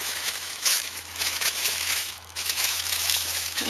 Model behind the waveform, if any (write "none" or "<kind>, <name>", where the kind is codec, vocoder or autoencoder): autoencoder, DAC-VAE